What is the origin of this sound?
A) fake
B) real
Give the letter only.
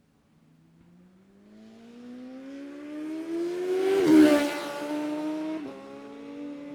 B